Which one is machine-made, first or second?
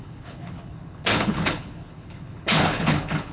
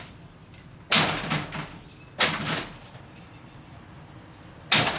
first